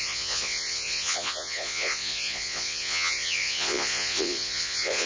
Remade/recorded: remade